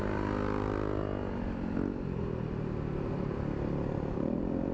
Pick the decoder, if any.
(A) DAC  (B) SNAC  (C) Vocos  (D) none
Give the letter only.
D